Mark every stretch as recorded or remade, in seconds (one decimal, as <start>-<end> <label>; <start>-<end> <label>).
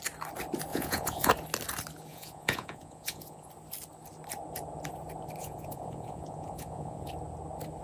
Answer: 0.0-0.7 recorded; 0.7-1.3 remade; 1.3-2.1 recorded; 2.1-3.5 remade; 3.5-5.4 recorded; 5.4-7.1 remade; 7.1-7.8 recorded